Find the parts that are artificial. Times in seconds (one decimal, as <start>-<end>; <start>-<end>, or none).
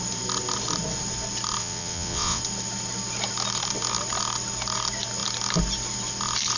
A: 1.6-2.4